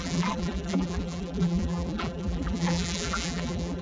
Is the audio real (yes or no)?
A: no